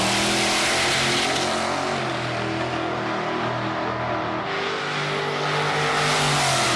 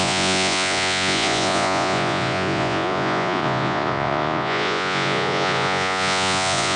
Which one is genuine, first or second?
first